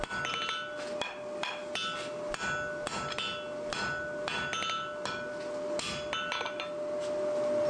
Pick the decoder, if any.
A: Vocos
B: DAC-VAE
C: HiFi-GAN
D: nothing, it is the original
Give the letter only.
D